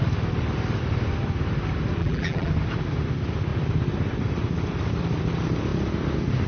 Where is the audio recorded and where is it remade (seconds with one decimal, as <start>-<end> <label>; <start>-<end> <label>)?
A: 0.0-2.0 recorded; 2.0-2.5 remade; 2.5-6.5 recorded